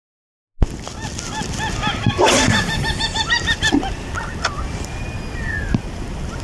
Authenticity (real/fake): real